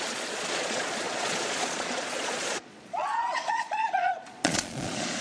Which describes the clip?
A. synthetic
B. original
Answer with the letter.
A